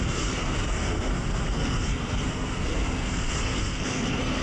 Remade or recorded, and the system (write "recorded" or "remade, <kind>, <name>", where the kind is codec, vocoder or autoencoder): remade, codec, SNAC